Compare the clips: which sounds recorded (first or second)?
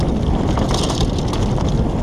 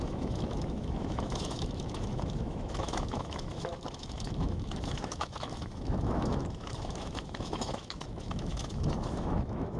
first